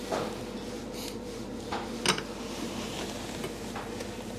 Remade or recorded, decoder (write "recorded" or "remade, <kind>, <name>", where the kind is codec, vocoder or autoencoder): recorded